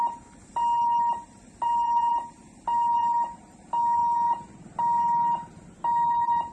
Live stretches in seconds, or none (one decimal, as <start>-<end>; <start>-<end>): 0.0-6.5